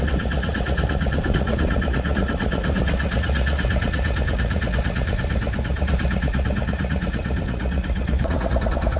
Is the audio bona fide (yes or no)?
no